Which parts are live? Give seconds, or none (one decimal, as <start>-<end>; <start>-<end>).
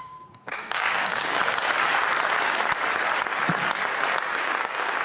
1.4-4.4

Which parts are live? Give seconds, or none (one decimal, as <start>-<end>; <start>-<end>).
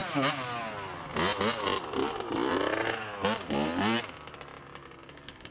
0.0-5.5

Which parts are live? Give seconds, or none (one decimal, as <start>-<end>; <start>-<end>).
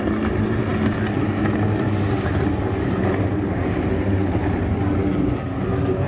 0.0-6.1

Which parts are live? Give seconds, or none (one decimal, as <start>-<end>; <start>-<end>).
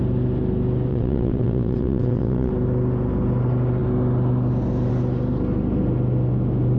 0.0-0.9; 2.5-6.8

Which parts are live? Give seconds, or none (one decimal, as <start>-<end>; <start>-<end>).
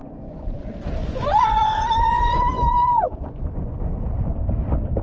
0.6-1.0; 4.0-5.0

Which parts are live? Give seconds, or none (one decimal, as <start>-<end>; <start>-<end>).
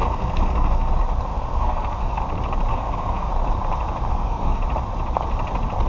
0.9-1.3; 2.2-2.7; 3.3-4.1; 4.6-5.9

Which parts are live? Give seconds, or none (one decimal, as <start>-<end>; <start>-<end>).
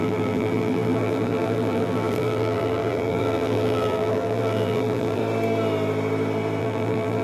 5.2-6.6